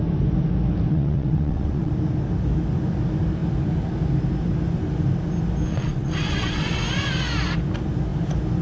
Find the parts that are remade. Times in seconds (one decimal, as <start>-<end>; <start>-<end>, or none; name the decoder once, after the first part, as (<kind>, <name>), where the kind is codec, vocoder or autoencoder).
0.9-1.9 (vocoder, WaveNeXt); 5.7-6.8

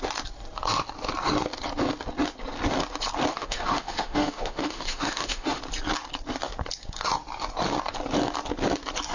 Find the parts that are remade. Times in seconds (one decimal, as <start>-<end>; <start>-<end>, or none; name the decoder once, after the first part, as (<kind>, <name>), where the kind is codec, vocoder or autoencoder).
3.3-5.6 (autoencoder, DAC-VAE)

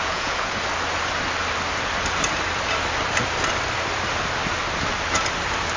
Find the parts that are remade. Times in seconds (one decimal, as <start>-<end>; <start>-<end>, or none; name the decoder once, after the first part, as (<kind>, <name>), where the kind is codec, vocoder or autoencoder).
0.0-0.6 (vocoder, Vocos)

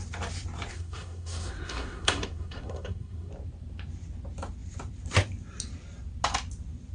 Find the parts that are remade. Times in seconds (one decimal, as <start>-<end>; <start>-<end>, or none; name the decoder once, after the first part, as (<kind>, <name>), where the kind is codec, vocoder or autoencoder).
0.7-3.3 (codec, SNAC)

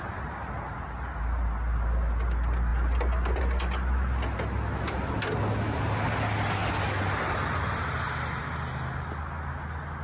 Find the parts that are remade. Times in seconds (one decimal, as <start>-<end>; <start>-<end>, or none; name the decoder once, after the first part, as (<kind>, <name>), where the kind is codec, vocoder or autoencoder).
none

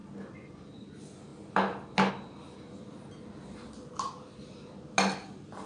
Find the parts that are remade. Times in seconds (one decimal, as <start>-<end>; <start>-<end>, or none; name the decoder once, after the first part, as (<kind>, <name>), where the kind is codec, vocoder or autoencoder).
none

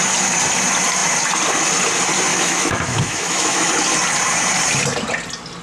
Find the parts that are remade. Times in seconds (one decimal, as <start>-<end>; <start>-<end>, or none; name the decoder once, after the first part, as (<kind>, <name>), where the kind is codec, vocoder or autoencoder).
2.3-3.7 (autoencoder, DAC-VAE)